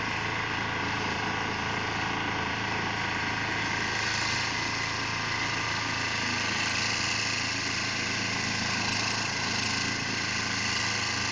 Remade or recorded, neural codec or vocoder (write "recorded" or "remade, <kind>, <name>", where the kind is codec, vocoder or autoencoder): recorded